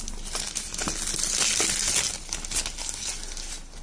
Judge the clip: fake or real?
real